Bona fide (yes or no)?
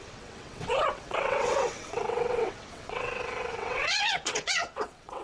no